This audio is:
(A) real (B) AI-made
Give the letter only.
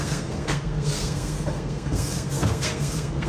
B